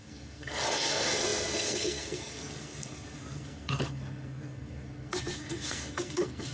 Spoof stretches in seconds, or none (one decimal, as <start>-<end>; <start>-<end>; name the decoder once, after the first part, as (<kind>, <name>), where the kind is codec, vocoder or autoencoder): 0.0-6.5 (codec, SNAC)